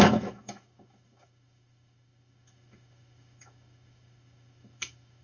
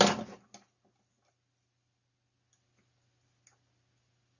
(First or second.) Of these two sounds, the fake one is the first